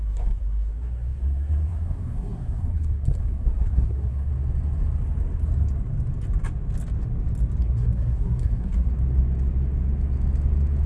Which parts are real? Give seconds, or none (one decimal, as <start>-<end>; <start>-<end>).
4.3-7.6; 8.9-10.9